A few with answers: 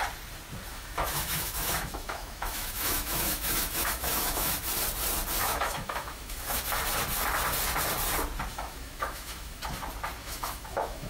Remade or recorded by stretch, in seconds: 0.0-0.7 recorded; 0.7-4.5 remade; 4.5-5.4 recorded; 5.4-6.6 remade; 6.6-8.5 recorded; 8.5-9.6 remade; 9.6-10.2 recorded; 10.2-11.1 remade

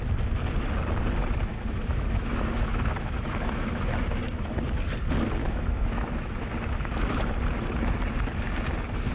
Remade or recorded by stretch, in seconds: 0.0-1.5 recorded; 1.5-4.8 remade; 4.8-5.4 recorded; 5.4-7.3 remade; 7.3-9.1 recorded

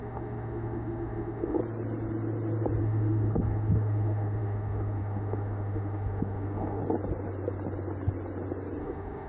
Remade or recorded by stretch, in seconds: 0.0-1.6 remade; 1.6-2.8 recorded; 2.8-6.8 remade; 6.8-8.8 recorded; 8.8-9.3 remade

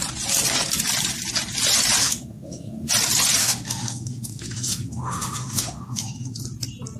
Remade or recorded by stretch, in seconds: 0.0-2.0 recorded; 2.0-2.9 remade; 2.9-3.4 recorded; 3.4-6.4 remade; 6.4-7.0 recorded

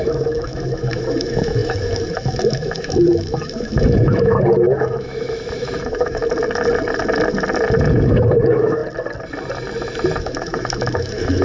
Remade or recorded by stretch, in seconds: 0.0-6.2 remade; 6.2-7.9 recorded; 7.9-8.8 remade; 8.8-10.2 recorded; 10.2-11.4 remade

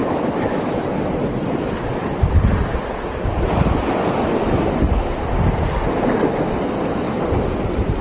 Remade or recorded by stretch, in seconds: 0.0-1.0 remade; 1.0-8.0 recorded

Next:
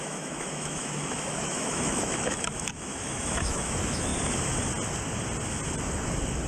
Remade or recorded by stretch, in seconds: 0.0-4.1 remade; 4.1-6.5 recorded